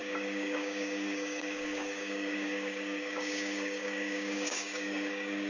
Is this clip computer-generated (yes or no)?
yes